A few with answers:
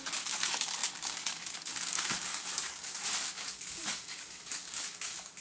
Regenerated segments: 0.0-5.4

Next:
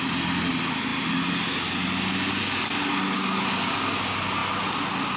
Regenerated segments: none

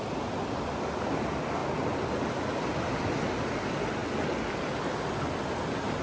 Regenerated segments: none